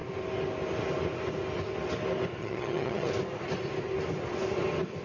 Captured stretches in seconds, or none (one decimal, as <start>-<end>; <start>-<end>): 0.0-2.4; 3.1-5.0